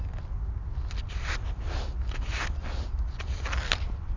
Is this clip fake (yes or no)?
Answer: no